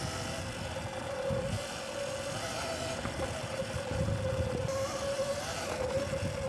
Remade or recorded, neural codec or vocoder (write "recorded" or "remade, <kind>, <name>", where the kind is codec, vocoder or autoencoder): recorded